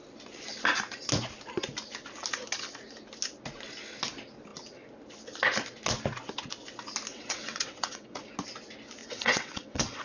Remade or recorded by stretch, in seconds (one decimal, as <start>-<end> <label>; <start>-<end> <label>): 0.0-7.1 recorded; 7.1-8.3 remade; 8.3-9.0 recorded; 9.0-10.0 remade